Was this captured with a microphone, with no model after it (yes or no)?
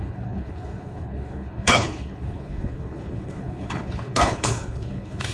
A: no